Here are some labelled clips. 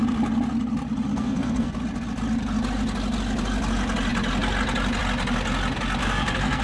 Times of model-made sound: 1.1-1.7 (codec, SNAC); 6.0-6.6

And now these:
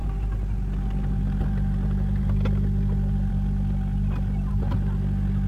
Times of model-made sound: none

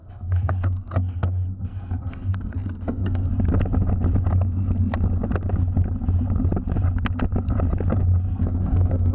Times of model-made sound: 0.0-3.3 (codec, SNAC); 8.3-9.1

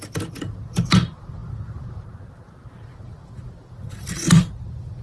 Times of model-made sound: none

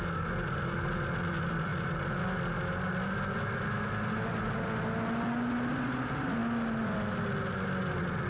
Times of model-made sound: none